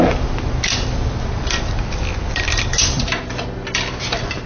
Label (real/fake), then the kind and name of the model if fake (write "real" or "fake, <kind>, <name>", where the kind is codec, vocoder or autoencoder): real